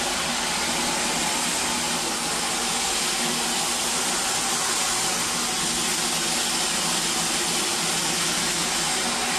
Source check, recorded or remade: recorded